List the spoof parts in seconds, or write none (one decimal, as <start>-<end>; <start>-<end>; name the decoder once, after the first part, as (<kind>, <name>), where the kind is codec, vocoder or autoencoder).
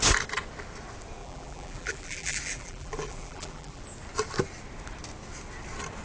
1.2-3.8 (vocoder, BigVGAN v2)